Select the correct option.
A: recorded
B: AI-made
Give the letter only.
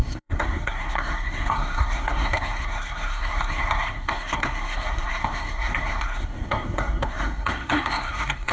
B